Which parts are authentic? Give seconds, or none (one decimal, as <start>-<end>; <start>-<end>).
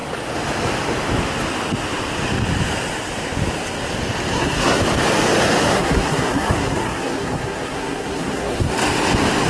0.0-4.3; 4.8-5.7; 8.7-9.5